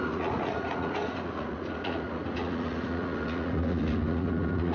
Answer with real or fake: fake